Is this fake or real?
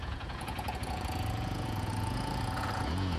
fake